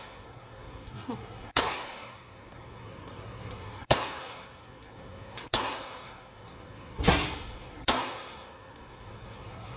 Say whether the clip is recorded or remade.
remade